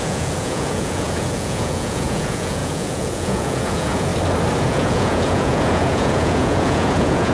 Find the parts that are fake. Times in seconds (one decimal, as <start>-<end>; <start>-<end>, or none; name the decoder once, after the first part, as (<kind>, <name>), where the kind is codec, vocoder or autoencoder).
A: 0.0-4.1 (vocoder, Vocos); 4.6-7.3